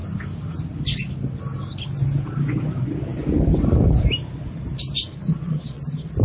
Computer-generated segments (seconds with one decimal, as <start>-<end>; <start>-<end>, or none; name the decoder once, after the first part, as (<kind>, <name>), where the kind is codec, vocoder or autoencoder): 5.3-5.8 (vocoder, Vocos)